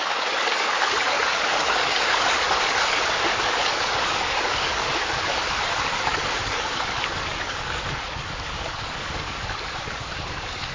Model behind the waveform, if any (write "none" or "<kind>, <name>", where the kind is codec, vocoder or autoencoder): codec, DAC